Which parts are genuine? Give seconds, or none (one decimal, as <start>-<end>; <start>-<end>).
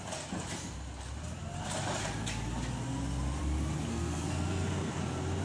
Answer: 0.0-3.9; 5.0-5.4